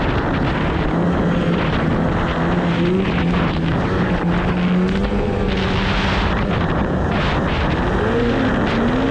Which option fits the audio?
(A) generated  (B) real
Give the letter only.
B